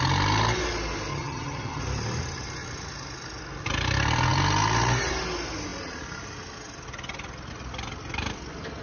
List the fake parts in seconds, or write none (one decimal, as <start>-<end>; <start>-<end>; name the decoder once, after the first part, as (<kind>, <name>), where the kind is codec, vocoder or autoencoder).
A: 1.1-1.8 (vocoder, HiFi-GAN)